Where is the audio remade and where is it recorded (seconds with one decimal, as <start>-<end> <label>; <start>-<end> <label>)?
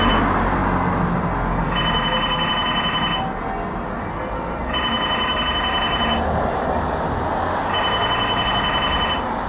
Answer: 0.0-9.5 recorded